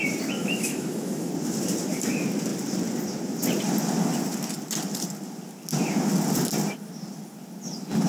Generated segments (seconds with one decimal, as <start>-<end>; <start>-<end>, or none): 0.4-1.3